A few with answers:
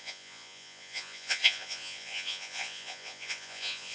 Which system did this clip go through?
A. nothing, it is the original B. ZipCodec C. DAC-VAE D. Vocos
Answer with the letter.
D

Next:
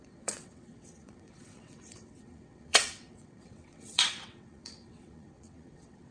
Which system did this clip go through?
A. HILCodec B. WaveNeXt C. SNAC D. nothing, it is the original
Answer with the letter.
B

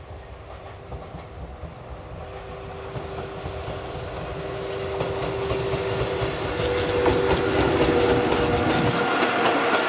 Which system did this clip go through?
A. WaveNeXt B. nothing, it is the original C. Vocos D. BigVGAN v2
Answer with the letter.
B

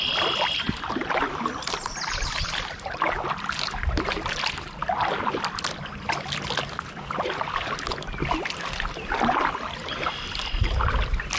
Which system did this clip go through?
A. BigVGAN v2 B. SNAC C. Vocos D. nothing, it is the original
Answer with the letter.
D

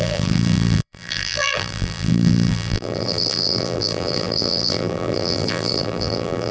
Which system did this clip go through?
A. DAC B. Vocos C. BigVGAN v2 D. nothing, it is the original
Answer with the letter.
C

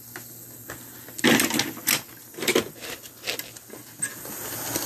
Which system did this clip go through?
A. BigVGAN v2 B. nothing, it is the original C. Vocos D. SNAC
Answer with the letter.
B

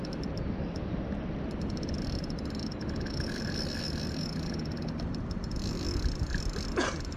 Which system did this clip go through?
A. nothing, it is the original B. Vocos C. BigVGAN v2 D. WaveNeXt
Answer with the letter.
A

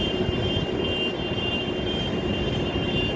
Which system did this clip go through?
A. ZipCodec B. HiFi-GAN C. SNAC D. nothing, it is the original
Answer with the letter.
D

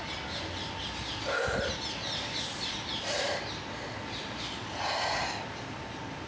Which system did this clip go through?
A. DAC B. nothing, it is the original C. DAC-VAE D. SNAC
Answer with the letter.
B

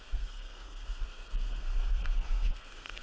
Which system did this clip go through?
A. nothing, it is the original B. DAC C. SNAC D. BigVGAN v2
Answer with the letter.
C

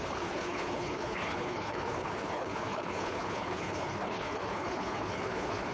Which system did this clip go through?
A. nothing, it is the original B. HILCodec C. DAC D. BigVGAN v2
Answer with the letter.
B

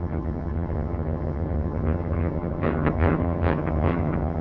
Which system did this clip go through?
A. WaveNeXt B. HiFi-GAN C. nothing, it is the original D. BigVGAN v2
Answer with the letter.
B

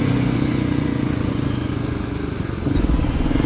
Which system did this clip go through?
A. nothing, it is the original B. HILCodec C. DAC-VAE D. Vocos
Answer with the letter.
D